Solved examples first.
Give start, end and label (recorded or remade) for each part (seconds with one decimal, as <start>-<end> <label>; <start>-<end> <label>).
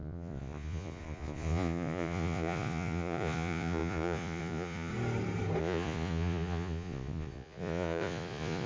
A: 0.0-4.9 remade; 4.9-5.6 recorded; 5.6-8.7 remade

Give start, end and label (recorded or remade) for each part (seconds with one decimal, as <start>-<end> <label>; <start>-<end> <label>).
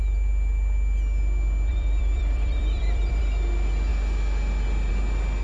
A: 0.0-1.7 recorded; 1.7-3.2 remade; 3.2-5.4 recorded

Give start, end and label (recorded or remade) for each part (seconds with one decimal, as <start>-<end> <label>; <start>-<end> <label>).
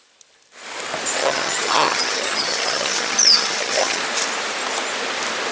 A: 0.0-1.2 recorded; 1.2-4.0 remade; 4.0-5.5 recorded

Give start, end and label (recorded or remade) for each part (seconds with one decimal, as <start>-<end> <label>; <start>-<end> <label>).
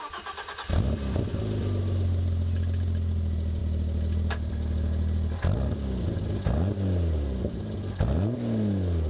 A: 0.0-9.1 recorded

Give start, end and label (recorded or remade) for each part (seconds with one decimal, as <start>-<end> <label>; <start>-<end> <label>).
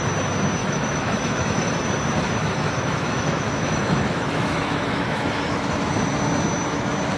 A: 0.0-0.6 recorded; 0.6-1.7 remade; 1.7-2.4 recorded; 2.4-5.9 remade; 5.9-7.2 recorded